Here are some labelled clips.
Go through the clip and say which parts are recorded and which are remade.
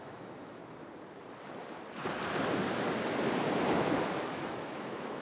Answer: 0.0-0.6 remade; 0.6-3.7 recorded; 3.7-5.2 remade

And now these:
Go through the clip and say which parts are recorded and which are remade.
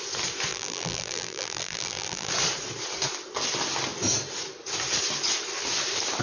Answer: 0.0-0.5 recorded; 0.5-2.3 remade; 2.3-6.2 recorded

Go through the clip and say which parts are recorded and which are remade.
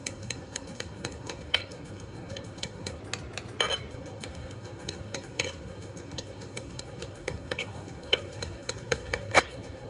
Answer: 0.0-3.0 remade; 3.0-3.9 recorded; 3.9-9.9 remade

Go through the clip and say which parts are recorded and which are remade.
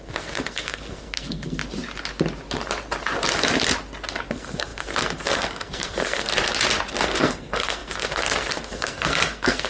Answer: 0.0-1.6 remade; 1.6-4.3 recorded; 4.3-6.3 remade; 6.3-6.9 recorded; 6.9-9.7 remade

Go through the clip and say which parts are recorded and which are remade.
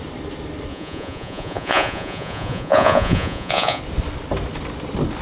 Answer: 0.0-0.7 recorded; 0.7-3.8 remade; 3.8-5.2 recorded